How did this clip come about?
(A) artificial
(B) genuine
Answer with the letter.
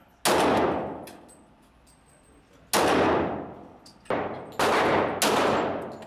B